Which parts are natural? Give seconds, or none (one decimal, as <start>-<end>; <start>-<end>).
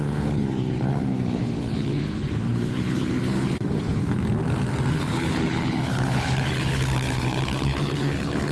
4.2-4.9